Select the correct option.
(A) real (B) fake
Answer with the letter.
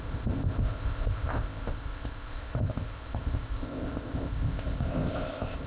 B